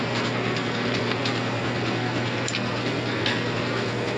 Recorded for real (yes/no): no